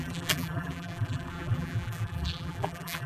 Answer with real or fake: fake